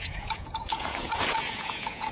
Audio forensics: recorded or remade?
remade